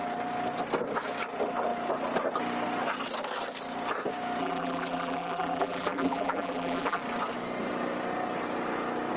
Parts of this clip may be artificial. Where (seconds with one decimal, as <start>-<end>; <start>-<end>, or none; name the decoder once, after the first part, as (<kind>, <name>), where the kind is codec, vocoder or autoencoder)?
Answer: 4.4-7.0 (vocoder, BigVGAN v2)